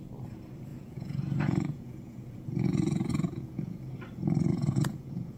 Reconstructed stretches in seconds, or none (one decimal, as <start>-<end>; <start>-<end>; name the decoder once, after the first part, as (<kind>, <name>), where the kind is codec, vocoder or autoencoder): 0.7-3.9 (vocoder, Vocos); 4.5-5.4